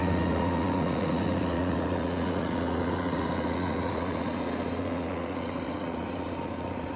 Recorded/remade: remade